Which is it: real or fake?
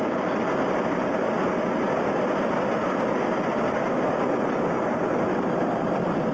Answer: real